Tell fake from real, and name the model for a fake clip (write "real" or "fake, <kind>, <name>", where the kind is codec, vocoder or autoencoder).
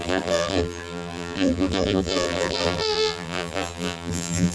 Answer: fake, vocoder, BigVGAN v2